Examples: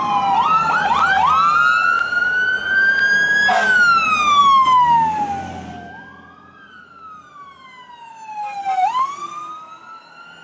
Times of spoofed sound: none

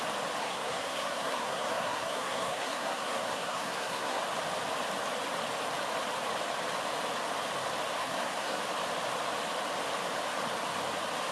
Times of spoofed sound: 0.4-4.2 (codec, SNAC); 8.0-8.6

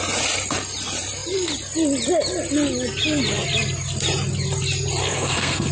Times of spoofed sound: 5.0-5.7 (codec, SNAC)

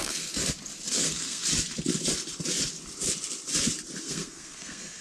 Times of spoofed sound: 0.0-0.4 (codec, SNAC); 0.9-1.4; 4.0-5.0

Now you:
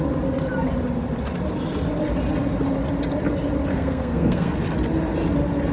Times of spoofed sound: 3.7-4.6 (codec, SNAC)

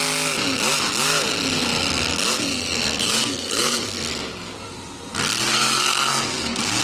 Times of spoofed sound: 2.5-4.1 (codec, SNAC); 5.5-6.8

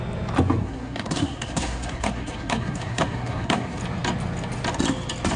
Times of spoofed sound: 0.6-3.8 (codec, SNAC)

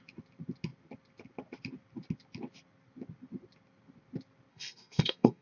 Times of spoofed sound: 4.5-5.4 (codec, SNAC)